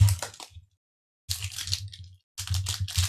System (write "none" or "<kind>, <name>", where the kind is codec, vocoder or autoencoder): none